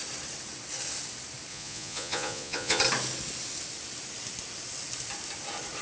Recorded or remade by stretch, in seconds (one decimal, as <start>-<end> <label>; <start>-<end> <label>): 0.0-1.5 recorded; 1.5-2.8 remade; 2.8-5.8 recorded